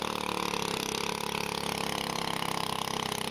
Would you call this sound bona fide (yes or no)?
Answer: yes